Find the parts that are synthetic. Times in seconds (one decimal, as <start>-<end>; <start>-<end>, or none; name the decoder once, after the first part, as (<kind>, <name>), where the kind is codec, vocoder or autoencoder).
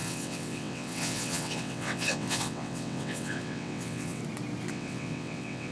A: 0.0-4.2 (vocoder, WaveNeXt); 4.7-5.7